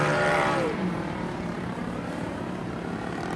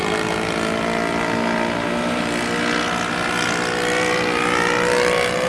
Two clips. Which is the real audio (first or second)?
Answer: second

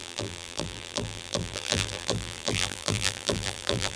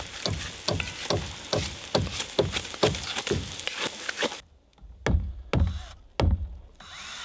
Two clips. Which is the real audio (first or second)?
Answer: second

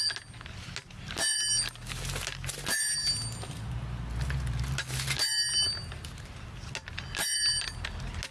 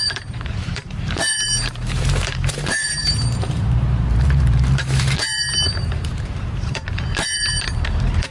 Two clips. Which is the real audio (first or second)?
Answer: first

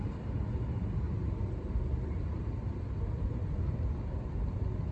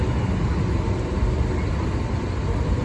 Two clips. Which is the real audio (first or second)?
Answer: second